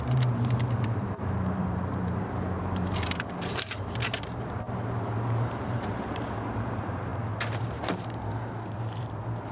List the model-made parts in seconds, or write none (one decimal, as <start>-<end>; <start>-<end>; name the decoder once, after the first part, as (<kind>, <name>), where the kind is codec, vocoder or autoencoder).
0.0-9.5 (vocoder, BigVGAN v2)